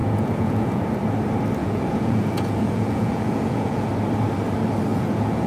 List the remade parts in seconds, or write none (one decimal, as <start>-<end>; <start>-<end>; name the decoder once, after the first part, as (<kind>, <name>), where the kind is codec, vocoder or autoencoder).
0.0-0.8 (vocoder, Vocos); 1.6-3.9; 4.9-5.5